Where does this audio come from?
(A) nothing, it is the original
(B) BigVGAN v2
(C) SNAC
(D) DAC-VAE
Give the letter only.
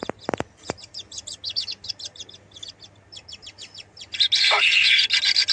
A